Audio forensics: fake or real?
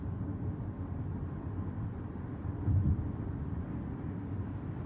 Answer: real